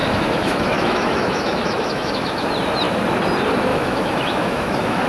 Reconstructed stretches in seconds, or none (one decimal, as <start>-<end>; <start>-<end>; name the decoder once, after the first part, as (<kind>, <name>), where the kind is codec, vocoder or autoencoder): 0.0-2.5 (autoencoder, DAC-VAE); 3.7-5.1